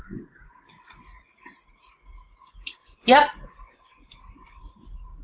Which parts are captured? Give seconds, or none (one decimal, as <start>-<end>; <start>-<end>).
2.8-4.5